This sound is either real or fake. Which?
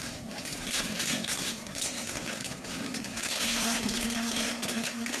fake